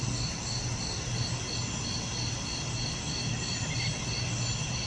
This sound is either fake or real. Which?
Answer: real